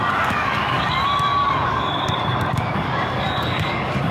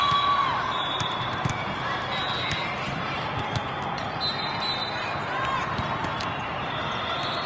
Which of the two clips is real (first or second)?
second